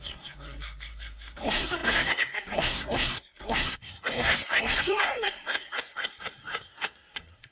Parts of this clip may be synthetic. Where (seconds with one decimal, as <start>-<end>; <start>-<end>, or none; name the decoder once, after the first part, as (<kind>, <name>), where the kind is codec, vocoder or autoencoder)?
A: 0.0-7.5 (codec, SNAC)